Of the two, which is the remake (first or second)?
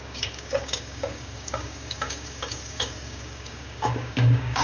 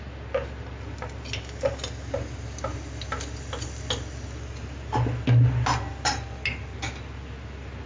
first